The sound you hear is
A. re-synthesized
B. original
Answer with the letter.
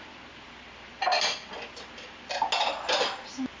B